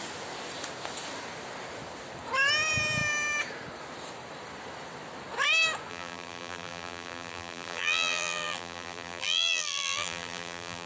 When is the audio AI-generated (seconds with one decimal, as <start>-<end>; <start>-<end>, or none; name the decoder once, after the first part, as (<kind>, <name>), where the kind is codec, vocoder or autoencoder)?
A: 5.9-10.9 (vocoder, BigVGAN v2)